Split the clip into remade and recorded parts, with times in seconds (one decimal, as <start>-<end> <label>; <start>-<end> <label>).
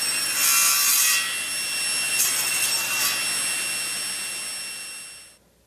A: 0.0-5.7 recorded